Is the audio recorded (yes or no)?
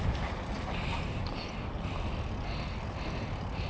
yes